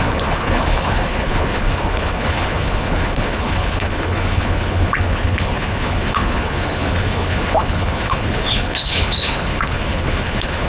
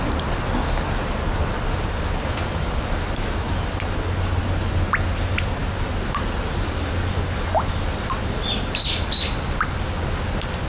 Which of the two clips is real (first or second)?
second